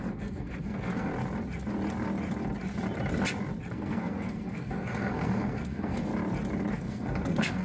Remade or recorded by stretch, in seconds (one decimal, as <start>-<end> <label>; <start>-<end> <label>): 0.0-1.1 remade; 1.1-3.7 recorded; 3.7-6.1 remade; 6.1-6.7 recorded; 6.7-7.6 remade